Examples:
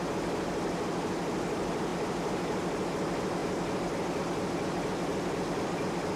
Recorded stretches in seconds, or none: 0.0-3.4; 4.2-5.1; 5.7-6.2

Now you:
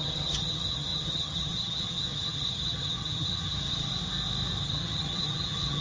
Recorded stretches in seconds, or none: 3.9-4.6

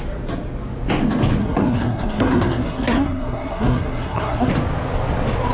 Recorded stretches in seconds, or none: 0.0-1.4; 4.5-5.5

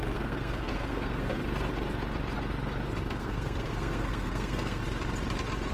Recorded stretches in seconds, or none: 1.4-3.1; 4.8-5.7

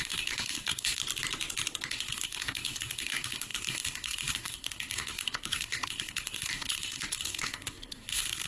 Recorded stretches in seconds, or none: 1.0-1.9

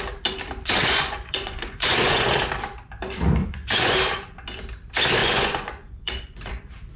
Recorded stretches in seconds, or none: 0.0-0.8; 2.3-3.4; 4.0-5.2; 6.5-7.0

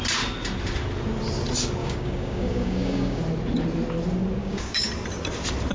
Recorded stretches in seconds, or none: 0.0-1.8; 3.2-4.4; 4.9-5.7